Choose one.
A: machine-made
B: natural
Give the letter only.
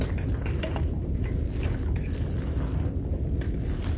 B